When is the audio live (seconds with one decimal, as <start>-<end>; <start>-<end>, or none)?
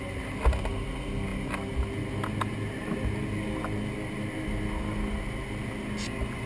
0.0-6.5